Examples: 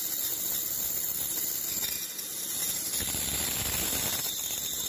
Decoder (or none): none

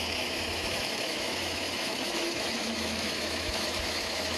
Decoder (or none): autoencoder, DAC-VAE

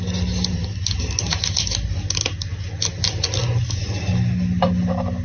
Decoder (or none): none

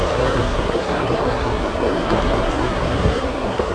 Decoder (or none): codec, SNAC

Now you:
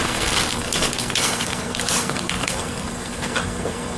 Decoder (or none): codec, SNAC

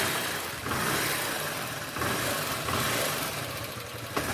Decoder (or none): vocoder, BigVGAN v2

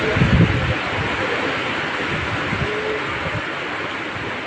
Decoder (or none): none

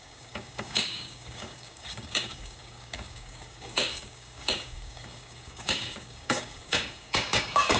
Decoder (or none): codec, DAC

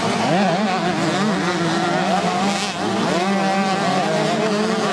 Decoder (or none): none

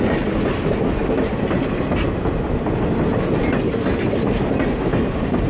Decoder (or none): none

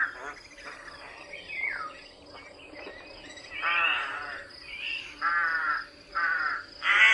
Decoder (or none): none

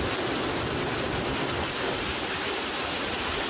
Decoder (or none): none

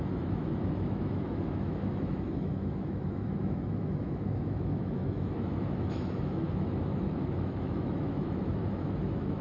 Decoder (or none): autoencoder, DAC-VAE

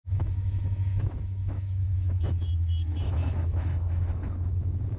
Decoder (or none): autoencoder, DAC-VAE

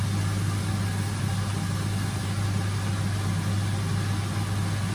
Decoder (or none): none